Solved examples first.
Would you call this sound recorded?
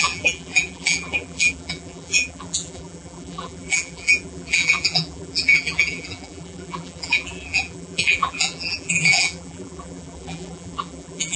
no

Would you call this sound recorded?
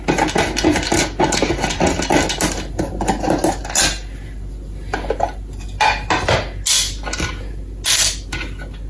yes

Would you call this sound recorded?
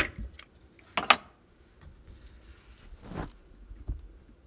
yes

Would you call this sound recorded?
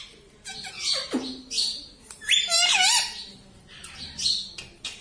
no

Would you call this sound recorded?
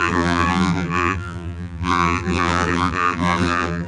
no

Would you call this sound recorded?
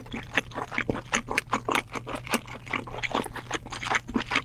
yes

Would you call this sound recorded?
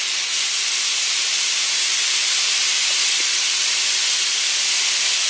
no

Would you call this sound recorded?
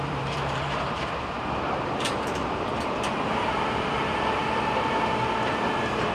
no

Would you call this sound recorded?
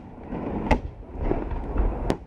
yes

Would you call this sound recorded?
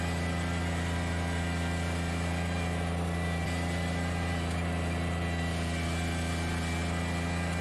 yes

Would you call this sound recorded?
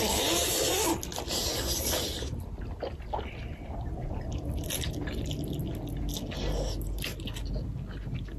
yes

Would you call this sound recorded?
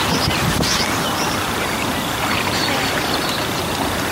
no